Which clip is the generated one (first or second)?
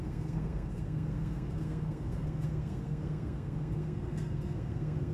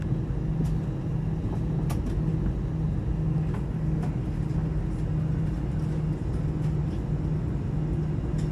first